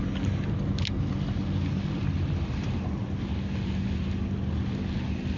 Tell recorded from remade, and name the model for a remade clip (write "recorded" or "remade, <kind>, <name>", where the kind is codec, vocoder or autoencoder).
recorded